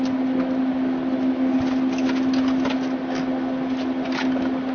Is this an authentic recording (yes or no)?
yes